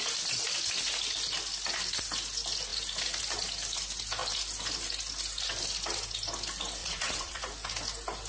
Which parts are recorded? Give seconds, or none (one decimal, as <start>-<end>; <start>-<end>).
0.0-6.8; 7.5-8.3